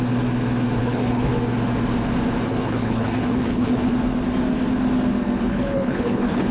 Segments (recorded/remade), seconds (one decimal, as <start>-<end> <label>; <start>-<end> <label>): 0.0-0.8 recorded; 0.8-1.3 remade; 1.3-2.5 recorded; 2.5-3.9 remade; 3.9-5.5 recorded; 5.5-6.5 remade